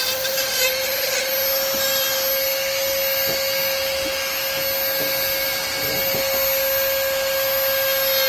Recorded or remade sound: recorded